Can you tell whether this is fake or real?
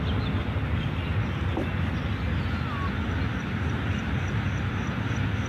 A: real